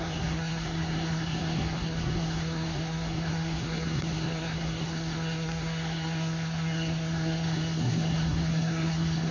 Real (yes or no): no